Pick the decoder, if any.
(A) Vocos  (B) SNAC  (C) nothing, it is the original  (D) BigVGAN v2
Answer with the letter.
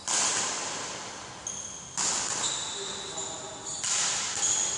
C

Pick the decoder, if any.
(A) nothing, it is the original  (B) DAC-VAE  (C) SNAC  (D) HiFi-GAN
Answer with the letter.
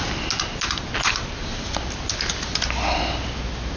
A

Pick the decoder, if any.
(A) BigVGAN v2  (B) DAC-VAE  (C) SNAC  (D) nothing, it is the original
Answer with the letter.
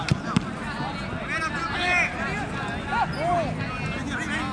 D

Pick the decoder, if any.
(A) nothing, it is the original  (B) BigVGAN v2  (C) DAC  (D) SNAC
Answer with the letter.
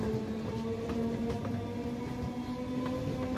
A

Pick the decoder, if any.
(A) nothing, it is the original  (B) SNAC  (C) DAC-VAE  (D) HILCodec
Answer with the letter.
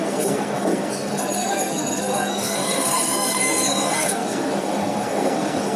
B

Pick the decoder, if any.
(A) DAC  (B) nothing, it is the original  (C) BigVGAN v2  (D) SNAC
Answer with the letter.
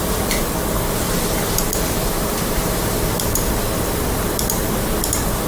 B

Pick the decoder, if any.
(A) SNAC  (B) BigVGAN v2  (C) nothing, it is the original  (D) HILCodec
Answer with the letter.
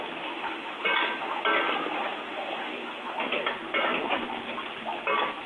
C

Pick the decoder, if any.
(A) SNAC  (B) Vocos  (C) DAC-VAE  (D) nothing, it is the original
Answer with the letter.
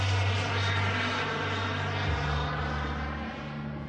D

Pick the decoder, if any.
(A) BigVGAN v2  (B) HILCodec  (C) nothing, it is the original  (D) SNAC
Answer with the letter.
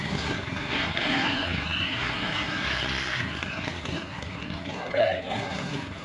D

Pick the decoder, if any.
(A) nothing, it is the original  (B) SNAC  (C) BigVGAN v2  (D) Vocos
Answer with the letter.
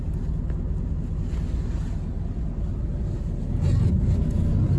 A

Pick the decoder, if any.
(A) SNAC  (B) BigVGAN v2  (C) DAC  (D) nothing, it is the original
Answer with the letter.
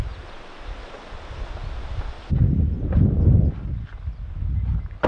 D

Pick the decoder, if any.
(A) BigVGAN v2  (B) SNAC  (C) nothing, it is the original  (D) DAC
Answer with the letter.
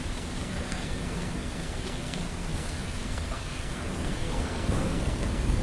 B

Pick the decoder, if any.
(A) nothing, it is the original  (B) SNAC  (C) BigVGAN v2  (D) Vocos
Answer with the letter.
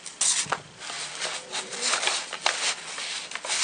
A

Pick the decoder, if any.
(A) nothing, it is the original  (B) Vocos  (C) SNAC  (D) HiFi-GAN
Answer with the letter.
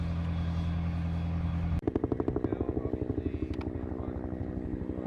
A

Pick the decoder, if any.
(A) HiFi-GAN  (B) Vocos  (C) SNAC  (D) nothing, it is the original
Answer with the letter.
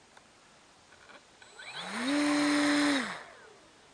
D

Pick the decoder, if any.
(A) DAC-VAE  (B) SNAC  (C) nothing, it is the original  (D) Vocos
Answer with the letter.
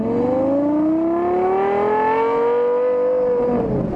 C